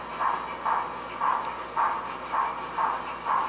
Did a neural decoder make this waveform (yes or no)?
no